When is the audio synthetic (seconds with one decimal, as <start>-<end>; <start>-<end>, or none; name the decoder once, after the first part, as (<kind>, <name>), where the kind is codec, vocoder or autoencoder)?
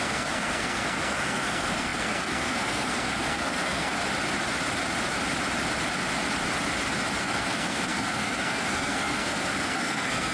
0.0-4.0 (codec, SNAC); 7.2-10.3